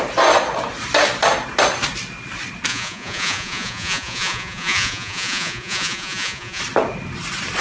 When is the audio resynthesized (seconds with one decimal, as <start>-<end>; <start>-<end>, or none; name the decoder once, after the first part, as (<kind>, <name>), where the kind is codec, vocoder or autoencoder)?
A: 2.7-6.6 (vocoder, Vocos)